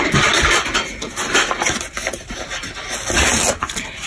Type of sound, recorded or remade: recorded